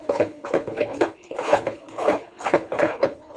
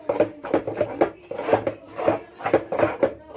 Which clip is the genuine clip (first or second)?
second